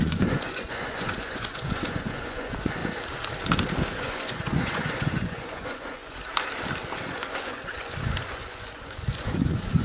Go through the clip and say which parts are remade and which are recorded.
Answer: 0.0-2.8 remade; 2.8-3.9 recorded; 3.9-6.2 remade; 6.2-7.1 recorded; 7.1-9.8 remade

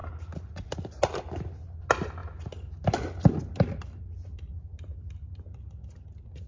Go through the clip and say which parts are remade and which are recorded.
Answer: 0.0-6.5 recorded

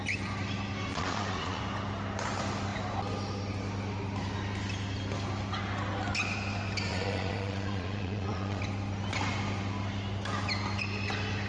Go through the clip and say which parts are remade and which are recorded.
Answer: 0.0-0.9 recorded; 0.9-1.6 remade; 1.6-6.9 recorded; 6.9-8.6 remade; 8.6-11.5 recorded

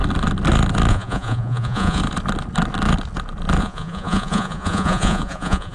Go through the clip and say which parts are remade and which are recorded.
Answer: 0.0-0.9 recorded; 0.9-2.0 remade; 2.0-3.6 recorded; 3.6-5.7 remade

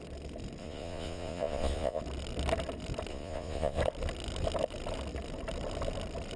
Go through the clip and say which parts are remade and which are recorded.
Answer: 0.0-0.6 recorded; 0.6-2.0 remade; 2.0-3.1 recorded; 3.1-3.8 remade; 3.8-6.4 recorded

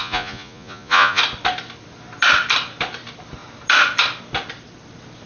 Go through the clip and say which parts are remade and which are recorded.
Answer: 0.0-1.2 remade; 1.2-5.3 recorded

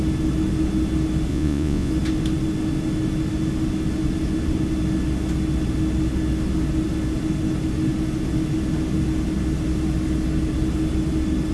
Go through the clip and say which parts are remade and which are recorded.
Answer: 0.0-1.3 recorded; 1.3-1.9 remade; 1.9-11.5 recorded

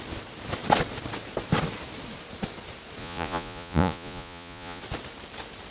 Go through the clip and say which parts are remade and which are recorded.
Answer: 0.0-3.0 recorded; 3.0-4.8 remade; 4.8-5.7 recorded